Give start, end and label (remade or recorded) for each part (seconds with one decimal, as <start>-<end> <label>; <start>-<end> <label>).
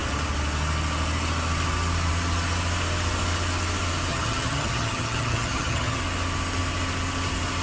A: 0.0-4.1 recorded; 4.1-6.0 remade; 6.0-7.6 recorded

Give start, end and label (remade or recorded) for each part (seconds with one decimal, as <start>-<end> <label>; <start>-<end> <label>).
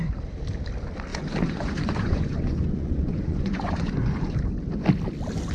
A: 0.0-1.1 recorded; 1.1-4.4 remade; 4.4-5.5 recorded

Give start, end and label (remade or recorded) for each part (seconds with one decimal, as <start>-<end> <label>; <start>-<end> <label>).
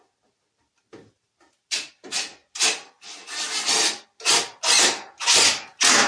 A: 0.0-6.1 recorded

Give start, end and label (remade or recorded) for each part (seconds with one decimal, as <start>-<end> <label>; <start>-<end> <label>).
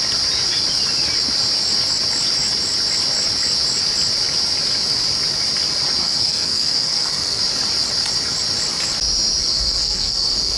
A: 0.0-6.0 recorded; 6.0-7.4 remade; 7.4-9.4 recorded; 9.4-10.6 remade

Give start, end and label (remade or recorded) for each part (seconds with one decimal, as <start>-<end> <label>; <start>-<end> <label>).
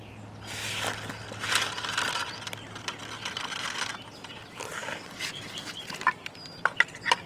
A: 0.0-4.8 recorded; 4.8-5.8 remade; 5.8-7.3 recorded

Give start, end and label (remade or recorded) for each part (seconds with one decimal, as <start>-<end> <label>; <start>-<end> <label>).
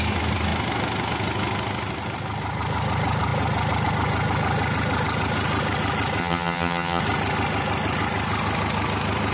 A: 0.0-6.2 recorded; 6.2-7.0 remade; 7.0-9.3 recorded